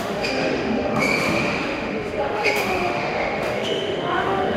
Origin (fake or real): fake